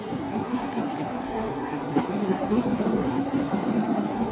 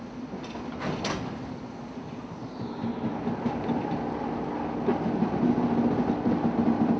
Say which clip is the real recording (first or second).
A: second